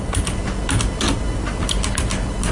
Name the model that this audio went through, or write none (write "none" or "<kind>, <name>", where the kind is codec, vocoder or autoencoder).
none